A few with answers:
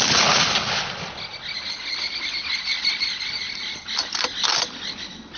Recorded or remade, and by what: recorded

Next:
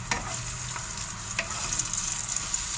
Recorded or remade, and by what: recorded